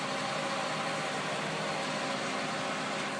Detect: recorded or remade recorded